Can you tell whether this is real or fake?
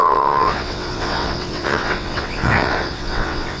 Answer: fake